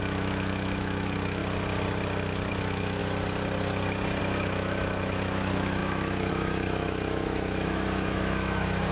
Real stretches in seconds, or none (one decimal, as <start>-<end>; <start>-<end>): 1.4-2.5; 3.0-4.2